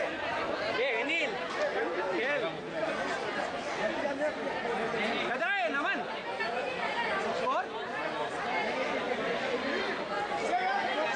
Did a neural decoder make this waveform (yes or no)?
no